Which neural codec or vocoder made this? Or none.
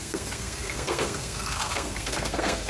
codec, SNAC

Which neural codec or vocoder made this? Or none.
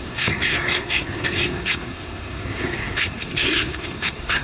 codec, SNAC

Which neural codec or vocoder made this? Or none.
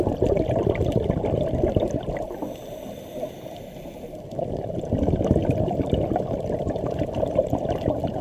vocoder, BigVGAN v2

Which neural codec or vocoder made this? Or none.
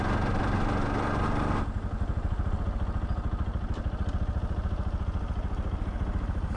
none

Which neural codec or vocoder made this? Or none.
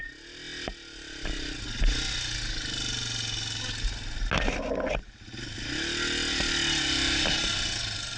none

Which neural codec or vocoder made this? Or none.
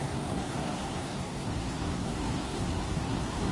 codec, SNAC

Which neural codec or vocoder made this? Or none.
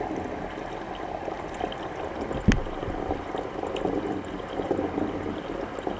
none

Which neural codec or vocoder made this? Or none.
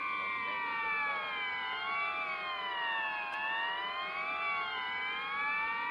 none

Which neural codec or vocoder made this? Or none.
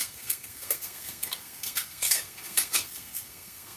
codec, SNAC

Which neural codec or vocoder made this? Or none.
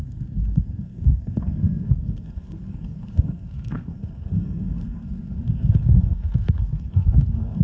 codec, SNAC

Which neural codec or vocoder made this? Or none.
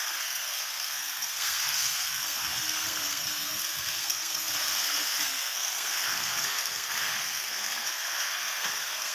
codec, SNAC